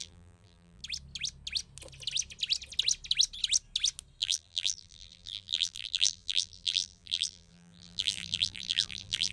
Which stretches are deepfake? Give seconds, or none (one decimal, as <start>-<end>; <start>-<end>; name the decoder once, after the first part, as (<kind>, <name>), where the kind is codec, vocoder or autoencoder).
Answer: 0.0-0.8 (vocoder, BigVGAN v2); 4.2-9.3